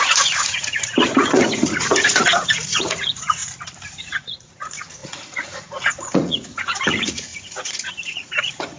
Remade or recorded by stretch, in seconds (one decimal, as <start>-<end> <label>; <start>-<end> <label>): 0.0-3.4 remade; 3.4-4.0 recorded; 4.0-8.8 remade